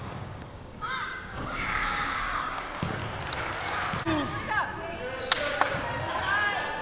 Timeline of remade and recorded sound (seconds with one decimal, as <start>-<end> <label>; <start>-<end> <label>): 0.0-3.0 remade; 3.0-6.8 recorded